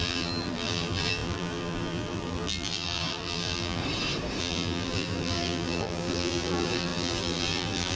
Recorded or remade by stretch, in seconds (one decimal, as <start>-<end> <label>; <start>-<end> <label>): 0.0-3.8 remade; 3.8-4.4 recorded; 4.4-8.0 remade